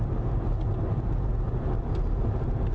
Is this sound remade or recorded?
recorded